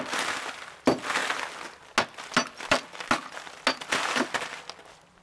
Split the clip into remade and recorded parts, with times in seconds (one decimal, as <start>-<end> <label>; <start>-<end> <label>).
0.0-5.2 recorded